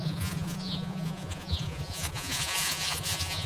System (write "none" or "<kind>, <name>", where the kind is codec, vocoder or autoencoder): vocoder, Vocos